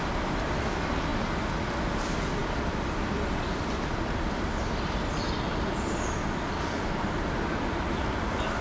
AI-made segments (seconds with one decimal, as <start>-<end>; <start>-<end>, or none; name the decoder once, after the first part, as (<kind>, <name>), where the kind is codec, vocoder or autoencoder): none